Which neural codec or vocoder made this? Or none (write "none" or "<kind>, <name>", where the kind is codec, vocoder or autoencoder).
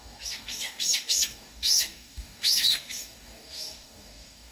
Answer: codec, DAC